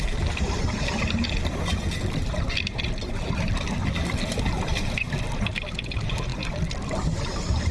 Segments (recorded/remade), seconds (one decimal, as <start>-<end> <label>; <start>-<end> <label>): 0.0-4.2 recorded; 4.2-4.8 remade; 4.8-7.7 recorded